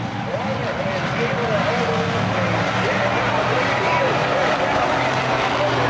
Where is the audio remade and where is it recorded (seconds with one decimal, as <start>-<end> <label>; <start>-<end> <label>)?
0.0-5.9 recorded